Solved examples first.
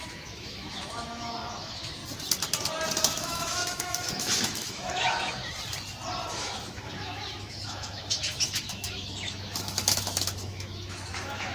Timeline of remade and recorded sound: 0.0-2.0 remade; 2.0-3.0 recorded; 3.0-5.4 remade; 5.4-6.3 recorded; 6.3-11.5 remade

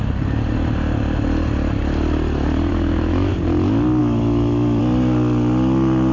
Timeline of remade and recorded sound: 0.0-2.7 recorded; 2.7-3.3 remade; 3.3-4.0 recorded; 4.0-4.8 remade; 4.8-6.1 recorded

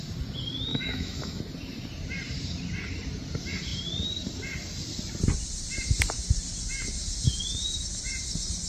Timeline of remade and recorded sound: 0.0-0.7 recorded; 0.7-1.4 remade; 1.4-8.7 recorded

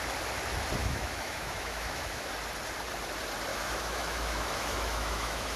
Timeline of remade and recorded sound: 0.0-0.8 recorded; 0.8-2.3 remade; 2.3-3.5 recorded; 3.5-5.6 remade

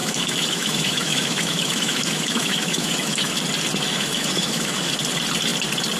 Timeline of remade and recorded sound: 0.0-3.4 remade; 3.4-3.9 recorded; 3.9-4.9 remade; 4.9-6.0 recorded

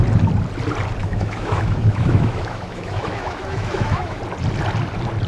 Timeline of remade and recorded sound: 0.0-1.0 recorded; 1.0-4.2 remade; 4.2-5.3 recorded

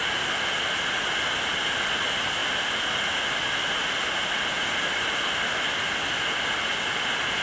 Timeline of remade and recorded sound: 0.0-7.4 recorded